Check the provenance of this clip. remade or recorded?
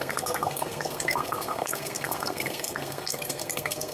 remade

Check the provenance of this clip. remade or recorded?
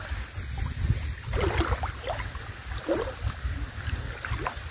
recorded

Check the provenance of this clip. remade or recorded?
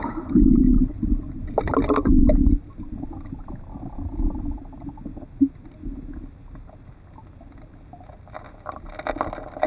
recorded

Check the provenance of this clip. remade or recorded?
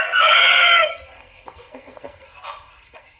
remade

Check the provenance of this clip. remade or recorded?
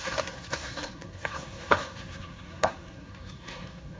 remade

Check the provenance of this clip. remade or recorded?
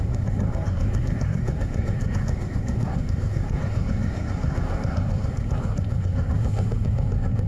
remade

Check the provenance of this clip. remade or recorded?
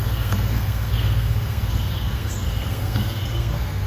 remade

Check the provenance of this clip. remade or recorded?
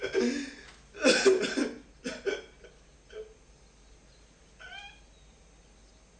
recorded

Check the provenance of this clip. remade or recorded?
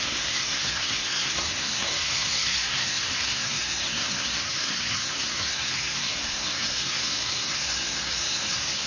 remade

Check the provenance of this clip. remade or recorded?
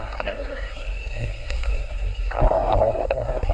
remade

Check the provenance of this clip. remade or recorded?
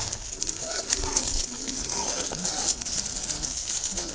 remade